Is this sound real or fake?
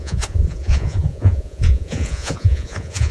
fake